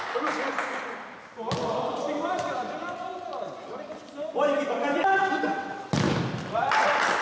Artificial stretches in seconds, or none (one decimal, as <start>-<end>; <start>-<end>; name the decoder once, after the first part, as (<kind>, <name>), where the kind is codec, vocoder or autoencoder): 4.9-5.8 (vocoder, WaveNeXt)